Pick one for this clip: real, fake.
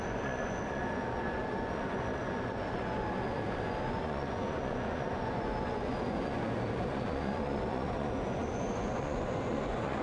fake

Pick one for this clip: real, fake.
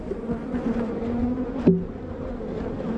real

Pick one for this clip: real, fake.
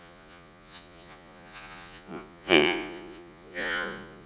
fake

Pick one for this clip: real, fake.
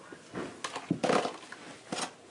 real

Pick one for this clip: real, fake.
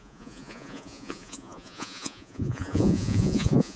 fake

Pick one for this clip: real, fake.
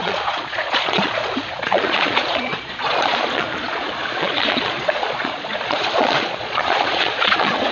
fake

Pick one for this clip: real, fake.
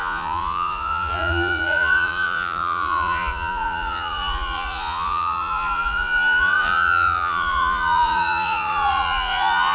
fake